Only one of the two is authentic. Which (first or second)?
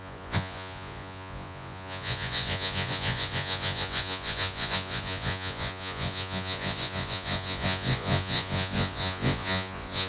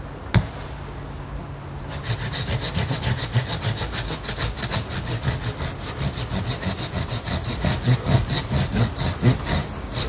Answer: second